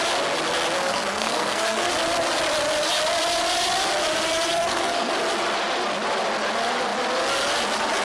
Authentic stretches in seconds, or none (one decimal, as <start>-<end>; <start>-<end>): 0.0-0.8; 1.9-4.5; 5.1-8.0